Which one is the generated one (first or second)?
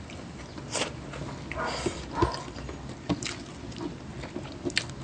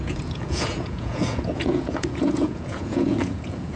second